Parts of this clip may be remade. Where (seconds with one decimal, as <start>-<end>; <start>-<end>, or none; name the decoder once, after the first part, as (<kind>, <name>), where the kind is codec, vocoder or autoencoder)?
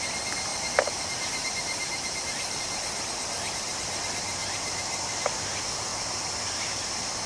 0.5-2.6 (vocoder, BigVGAN v2); 4.4-5.2